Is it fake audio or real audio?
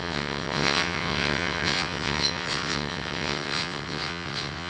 fake